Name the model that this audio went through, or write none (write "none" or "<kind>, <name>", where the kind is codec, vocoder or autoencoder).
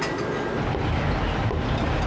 none